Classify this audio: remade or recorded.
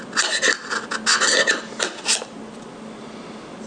recorded